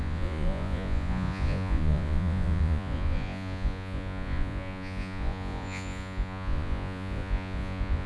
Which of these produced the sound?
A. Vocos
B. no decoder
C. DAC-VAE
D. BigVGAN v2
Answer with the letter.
A